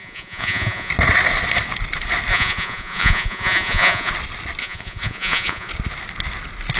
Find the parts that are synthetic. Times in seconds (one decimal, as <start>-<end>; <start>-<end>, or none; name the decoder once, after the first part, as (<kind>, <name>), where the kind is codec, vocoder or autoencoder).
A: 0.0-0.9 (vocoder, Vocos); 2.3-4.1; 4.6-5.7